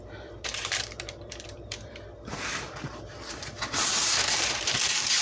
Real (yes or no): no